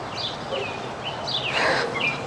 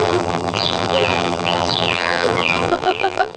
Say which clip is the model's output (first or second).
second